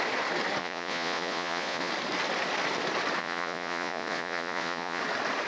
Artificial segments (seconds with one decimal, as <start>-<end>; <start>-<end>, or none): 0.6-1.9; 3.2-5.0